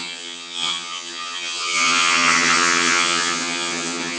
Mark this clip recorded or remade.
remade